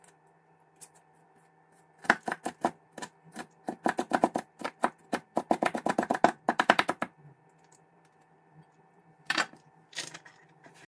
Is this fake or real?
fake